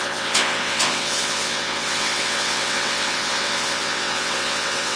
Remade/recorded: remade